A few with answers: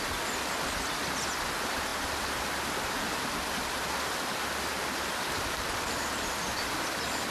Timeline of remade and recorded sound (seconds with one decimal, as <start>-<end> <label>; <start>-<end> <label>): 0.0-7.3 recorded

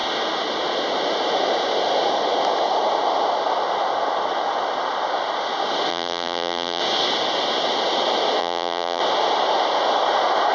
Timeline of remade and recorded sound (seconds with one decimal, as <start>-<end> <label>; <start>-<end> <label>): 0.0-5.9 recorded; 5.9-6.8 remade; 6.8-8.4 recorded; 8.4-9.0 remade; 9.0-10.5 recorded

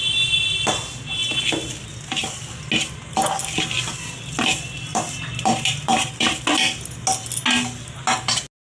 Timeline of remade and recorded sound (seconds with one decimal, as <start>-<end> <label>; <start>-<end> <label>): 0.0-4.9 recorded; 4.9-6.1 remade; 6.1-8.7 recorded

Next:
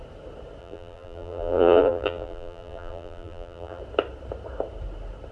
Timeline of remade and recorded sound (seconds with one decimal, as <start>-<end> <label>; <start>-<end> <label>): 0.0-0.6 recorded; 0.6-3.8 remade; 3.8-5.3 recorded

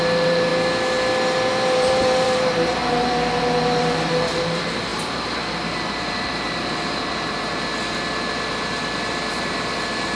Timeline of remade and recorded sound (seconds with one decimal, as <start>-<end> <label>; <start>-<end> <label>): 0.0-0.5 remade; 0.5-1.5 recorded; 1.5-7.7 remade; 7.7-9.3 recorded; 9.3-10.2 remade

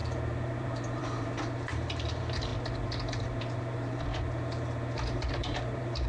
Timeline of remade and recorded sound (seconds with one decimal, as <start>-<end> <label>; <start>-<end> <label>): 0.0-2.5 remade; 2.5-3.4 recorded; 3.4-4.1 remade; 4.1-5.3 recorded; 5.3-6.1 remade